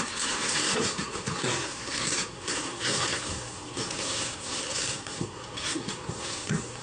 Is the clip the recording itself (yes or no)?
no